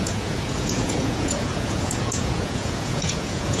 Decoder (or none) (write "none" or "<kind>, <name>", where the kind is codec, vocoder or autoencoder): vocoder, Vocos